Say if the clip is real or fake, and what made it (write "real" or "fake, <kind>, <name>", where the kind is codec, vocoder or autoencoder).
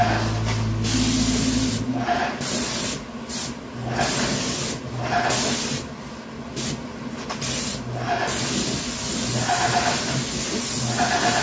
real